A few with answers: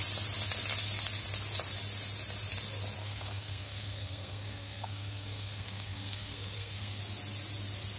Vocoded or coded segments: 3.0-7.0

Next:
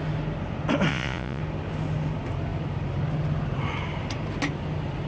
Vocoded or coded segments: 0.9-1.4

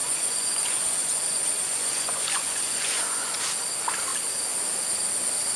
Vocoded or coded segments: 0.0-3.4